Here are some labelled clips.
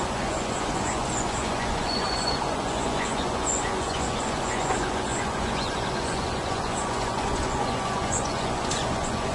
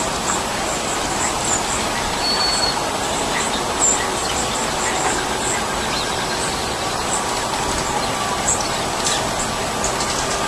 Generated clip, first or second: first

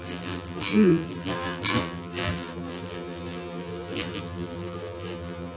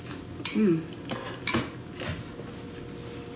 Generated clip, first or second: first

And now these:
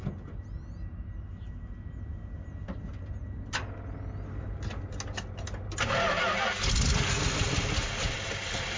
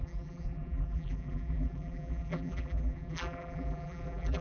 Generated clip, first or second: second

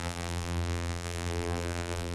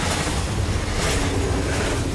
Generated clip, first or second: first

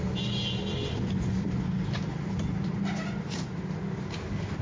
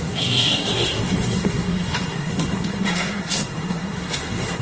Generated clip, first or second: second